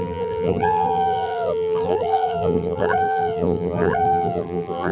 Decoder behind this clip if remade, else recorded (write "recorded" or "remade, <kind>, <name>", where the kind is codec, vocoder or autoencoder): remade, vocoder, BigVGAN v2